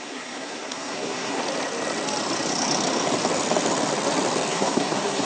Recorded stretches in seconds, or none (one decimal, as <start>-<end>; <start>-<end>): 1.4-4.5